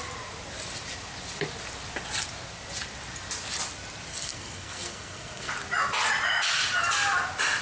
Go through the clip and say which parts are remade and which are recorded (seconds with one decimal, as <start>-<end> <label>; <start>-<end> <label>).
0.0-4.1 recorded; 4.1-5.5 remade; 5.5-7.6 recorded